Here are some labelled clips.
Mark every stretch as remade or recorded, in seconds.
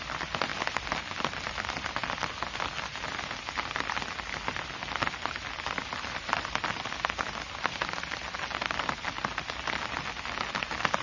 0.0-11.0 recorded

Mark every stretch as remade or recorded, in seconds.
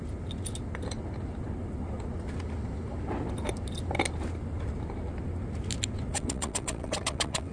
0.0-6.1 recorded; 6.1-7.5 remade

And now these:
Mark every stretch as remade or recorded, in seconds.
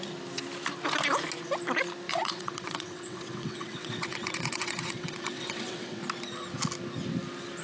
0.0-2.1 recorded; 2.1-6.0 remade; 6.0-7.6 recorded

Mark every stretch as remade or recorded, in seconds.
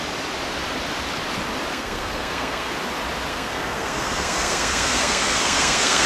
0.0-1.7 recorded; 1.7-2.7 remade; 2.7-3.3 recorded; 3.3-6.1 remade